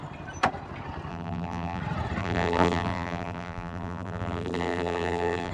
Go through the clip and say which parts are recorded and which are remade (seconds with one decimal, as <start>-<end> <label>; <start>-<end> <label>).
0.0-1.1 recorded; 1.1-1.8 remade; 1.8-2.2 recorded; 2.2-5.5 remade